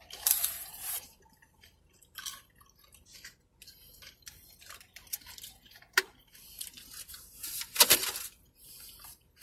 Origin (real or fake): fake